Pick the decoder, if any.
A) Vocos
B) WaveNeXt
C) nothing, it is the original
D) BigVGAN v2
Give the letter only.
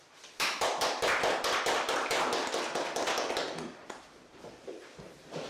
D